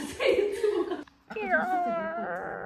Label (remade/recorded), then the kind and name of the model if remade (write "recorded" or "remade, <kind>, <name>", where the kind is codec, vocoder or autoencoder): recorded